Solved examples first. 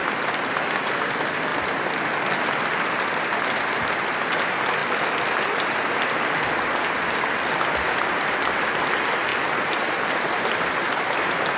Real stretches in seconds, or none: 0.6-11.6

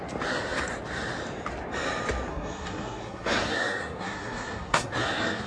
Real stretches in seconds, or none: 0.0-2.3

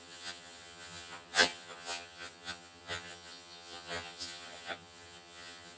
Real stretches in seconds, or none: none

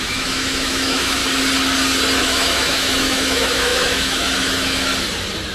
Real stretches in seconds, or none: 1.2-2.2; 4.9-5.5

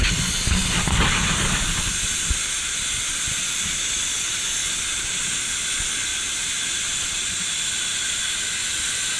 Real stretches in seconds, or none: 0.0-9.2

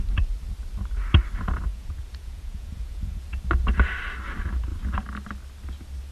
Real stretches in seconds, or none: 0.0-1.7; 3.2-6.1

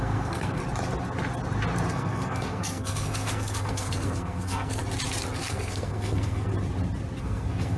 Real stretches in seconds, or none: 0.6-1.9; 4.8-5.4; 6.5-7.2

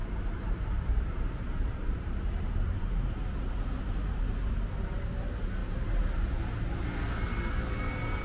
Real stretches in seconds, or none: 2.9-5.6; 6.7-8.2